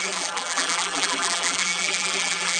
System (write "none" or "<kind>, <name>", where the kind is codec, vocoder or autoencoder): vocoder, BigVGAN v2